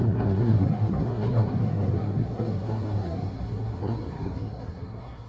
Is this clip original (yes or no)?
no